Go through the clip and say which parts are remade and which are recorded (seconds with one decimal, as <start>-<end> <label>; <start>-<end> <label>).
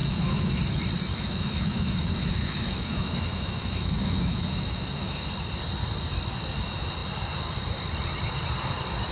0.0-0.6 remade; 0.6-1.1 recorded; 1.1-5.3 remade; 5.3-9.1 recorded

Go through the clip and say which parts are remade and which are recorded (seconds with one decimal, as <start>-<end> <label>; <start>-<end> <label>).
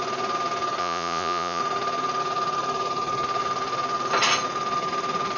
0.0-0.8 recorded; 0.8-1.6 remade; 1.6-5.4 recorded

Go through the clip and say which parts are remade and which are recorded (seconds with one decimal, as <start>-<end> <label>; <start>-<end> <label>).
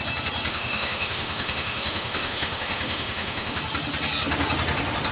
0.0-0.5 recorded; 0.5-3.6 remade; 3.6-5.1 recorded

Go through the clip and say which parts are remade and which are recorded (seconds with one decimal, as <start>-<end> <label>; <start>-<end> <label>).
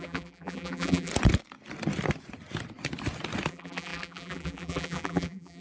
0.0-1.1 remade; 1.1-3.5 recorded; 3.5-5.6 remade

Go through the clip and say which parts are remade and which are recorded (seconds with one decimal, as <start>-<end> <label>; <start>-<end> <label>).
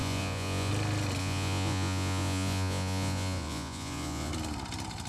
0.0-0.7 remade; 0.7-1.2 recorded; 1.2-4.3 remade; 4.3-5.1 recorded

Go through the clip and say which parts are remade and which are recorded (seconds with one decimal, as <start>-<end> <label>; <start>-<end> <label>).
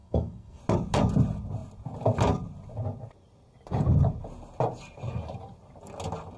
0.0-0.6 remade; 0.6-6.4 recorded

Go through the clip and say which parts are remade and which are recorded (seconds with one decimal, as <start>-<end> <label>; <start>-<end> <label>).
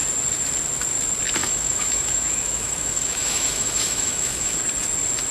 0.0-1.4 recorded; 1.4-4.6 remade; 4.6-5.3 recorded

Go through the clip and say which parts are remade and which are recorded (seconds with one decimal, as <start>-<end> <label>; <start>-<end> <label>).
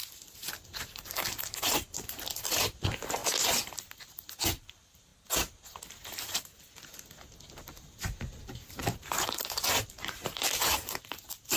0.0-3.2 remade; 3.2-4.1 recorded; 4.1-5.1 remade; 5.1-8.4 recorded; 8.4-11.6 remade